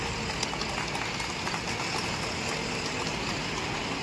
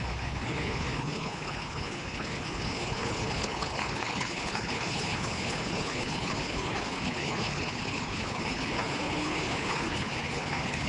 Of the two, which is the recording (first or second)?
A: first